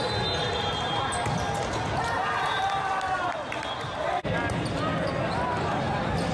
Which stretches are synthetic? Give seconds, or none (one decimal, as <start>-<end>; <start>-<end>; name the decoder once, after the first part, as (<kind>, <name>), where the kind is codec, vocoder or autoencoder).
none